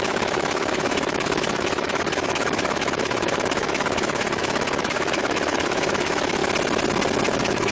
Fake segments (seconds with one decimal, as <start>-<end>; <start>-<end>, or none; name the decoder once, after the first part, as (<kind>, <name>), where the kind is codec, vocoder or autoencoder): 0.0-6.4 (autoencoder, DAC-VAE); 7.3-7.7